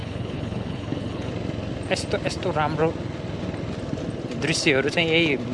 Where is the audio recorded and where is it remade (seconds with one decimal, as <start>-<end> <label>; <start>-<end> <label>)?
0.0-1.3 remade; 1.3-5.5 recorded